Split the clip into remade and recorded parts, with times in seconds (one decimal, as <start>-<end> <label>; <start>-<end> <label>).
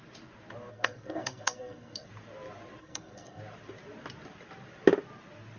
0.0-0.7 recorded; 0.7-2.1 remade; 2.1-2.8 recorded; 2.8-3.4 remade; 3.4-5.6 recorded